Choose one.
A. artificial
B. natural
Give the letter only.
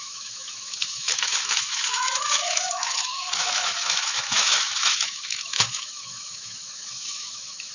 A